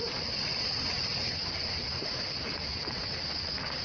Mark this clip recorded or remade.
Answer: recorded